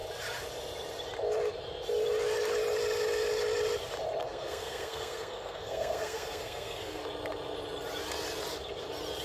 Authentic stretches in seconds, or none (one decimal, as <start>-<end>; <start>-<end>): 0.0-4.2; 7.0-9.2